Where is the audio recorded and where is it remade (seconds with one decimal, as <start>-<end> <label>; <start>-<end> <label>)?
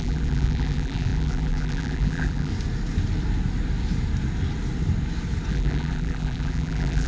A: 0.0-2.5 remade; 2.5-5.5 recorded; 5.5-7.1 remade